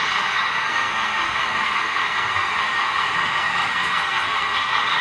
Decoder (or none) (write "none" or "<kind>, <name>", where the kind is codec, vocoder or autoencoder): codec, SNAC